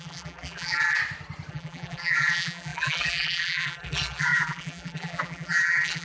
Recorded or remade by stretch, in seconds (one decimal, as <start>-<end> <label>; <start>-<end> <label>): 0.0-1.0 remade; 1.0-1.5 recorded; 1.5-6.0 remade